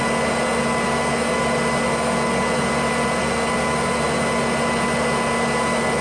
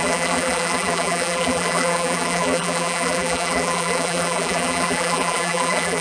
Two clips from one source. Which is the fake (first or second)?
second